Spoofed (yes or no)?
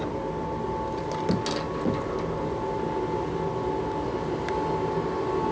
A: no